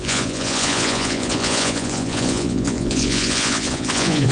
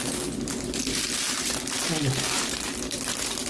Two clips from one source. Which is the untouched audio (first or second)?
second